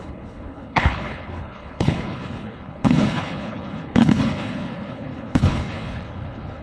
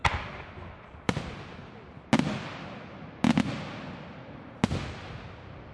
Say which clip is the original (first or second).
second